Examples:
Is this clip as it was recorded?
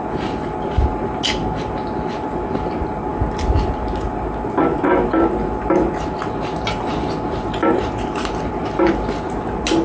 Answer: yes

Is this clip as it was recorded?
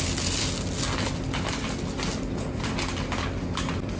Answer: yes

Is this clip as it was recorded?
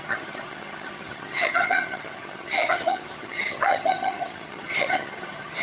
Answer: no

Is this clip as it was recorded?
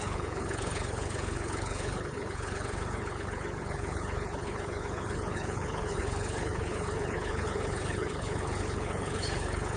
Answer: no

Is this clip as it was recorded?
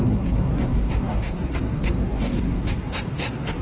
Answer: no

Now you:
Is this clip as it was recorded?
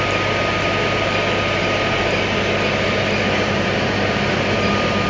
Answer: yes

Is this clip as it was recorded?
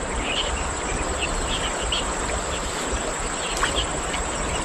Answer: yes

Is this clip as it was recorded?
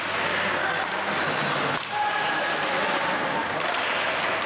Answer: yes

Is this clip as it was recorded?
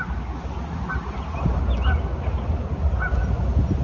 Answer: yes